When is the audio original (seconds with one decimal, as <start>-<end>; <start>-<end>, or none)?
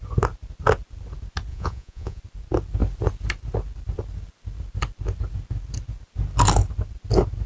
0.0-1.5; 2.2-7.5